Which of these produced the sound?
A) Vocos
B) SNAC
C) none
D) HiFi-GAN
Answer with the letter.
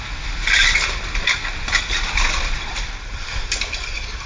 C